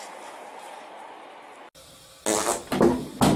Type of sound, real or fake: real